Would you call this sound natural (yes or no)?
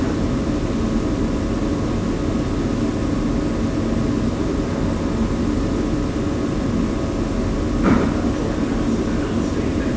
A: yes